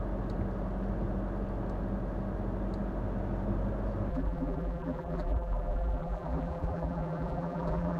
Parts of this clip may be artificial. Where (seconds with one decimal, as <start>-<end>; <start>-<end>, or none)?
4.1-8.0